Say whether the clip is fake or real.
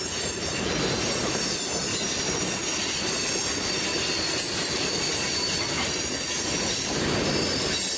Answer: real